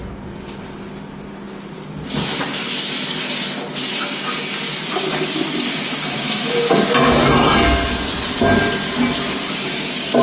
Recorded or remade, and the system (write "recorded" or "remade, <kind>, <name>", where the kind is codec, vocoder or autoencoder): recorded